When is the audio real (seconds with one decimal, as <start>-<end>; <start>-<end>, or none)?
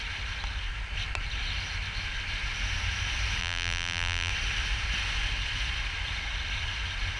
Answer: 0.0-3.4; 4.3-7.2